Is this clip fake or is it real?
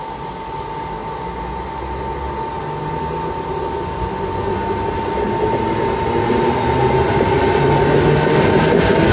real